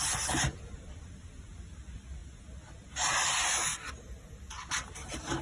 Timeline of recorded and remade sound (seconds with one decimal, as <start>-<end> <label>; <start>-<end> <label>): 0.0-5.4 recorded